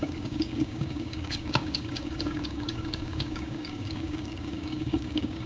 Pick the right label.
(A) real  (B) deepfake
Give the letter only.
B